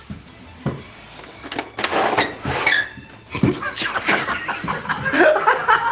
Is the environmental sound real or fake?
real